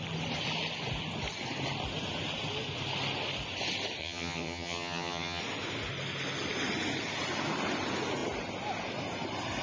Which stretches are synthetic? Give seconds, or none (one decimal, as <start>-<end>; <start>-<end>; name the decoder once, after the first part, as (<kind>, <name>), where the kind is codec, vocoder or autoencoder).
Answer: 4.0-5.4 (vocoder, HiFi-GAN)